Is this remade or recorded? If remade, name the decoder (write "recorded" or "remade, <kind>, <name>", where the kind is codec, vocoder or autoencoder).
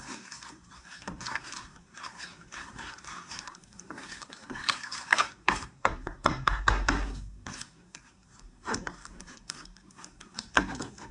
remade, codec, SNAC